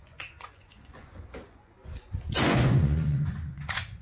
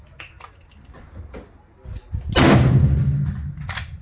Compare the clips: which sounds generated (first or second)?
first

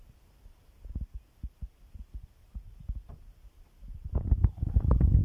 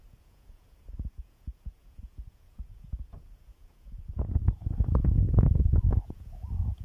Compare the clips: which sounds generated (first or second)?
second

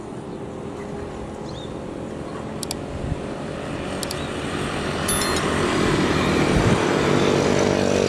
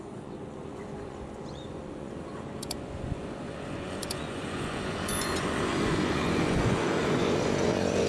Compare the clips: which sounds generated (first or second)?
second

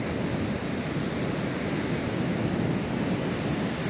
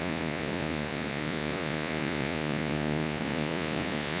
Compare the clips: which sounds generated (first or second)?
second